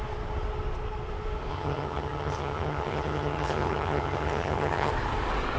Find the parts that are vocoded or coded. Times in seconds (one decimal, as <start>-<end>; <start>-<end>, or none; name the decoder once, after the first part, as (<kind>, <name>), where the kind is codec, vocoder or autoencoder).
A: 1.5-4.9 (vocoder, HiFi-GAN)